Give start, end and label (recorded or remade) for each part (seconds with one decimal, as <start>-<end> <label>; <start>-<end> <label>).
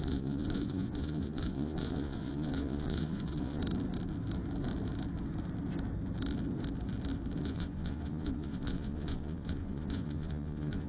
0.0-3.6 remade; 3.6-7.4 recorded; 7.4-10.9 remade